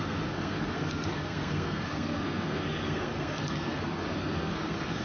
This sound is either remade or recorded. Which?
remade